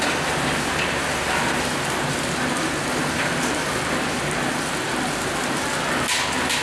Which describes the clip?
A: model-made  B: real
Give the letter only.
B